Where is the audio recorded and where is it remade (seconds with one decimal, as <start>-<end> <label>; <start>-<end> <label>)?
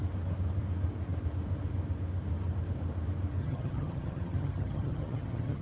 0.0-3.4 recorded; 3.4-5.6 remade